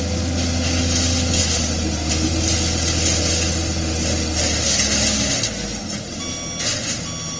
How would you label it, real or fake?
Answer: real